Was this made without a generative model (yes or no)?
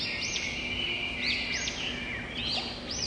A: yes